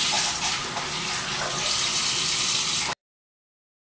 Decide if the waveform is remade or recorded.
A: recorded